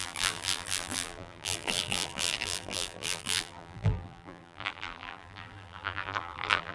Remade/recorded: remade